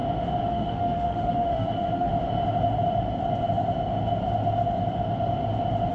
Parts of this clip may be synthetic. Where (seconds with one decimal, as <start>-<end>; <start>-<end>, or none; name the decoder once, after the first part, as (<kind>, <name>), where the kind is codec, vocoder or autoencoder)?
0.5-2.1 (autoencoder, DAC-VAE)